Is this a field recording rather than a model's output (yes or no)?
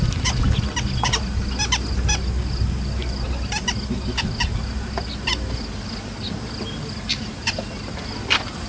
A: yes